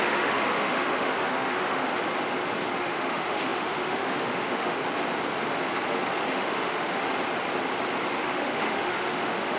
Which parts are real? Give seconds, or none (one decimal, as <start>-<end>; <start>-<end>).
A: 1.9-2.8; 4.8-6.3; 7.0-8.2